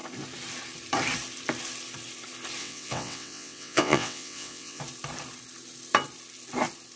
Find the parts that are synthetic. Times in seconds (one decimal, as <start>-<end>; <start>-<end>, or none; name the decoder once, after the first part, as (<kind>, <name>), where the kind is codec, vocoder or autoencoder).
2.6-4.8 (vocoder, WaveNeXt)

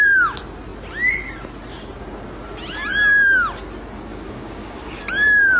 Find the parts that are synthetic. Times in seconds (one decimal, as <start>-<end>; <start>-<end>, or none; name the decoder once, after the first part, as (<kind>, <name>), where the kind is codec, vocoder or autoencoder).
4.1-5.0 (codec, DAC)

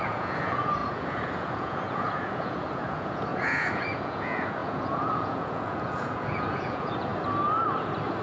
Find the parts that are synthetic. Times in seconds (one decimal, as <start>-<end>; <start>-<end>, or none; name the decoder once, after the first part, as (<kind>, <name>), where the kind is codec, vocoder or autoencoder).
0.0-7.1 (vocoder, Vocos)

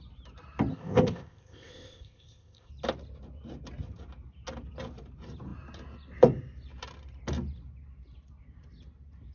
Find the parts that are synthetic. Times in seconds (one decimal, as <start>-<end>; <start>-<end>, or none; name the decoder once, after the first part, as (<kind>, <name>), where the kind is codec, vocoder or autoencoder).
0.7-2.7 (codec, ZipCodec)

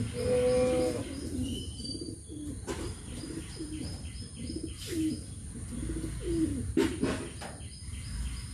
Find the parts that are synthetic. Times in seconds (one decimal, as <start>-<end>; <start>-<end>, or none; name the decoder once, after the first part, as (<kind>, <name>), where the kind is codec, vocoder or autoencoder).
1.5-5.1 (vocoder, BigVGAN v2)

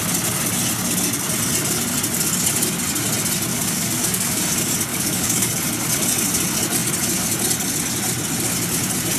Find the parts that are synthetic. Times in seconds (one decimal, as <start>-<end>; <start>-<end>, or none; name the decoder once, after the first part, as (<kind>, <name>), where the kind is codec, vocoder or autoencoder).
3.5-4.4 (codec, DAC); 4.9-5.5

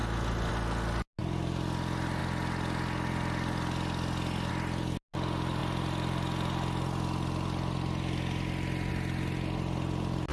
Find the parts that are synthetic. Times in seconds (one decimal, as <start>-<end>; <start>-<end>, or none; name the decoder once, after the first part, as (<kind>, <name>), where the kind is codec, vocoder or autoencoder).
none